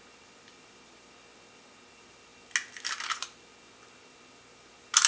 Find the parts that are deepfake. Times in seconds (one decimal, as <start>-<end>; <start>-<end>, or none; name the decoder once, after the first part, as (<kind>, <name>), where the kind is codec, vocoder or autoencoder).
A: none